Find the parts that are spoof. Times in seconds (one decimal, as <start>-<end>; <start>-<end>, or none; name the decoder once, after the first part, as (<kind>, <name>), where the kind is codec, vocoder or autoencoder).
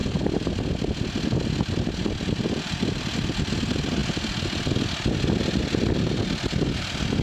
none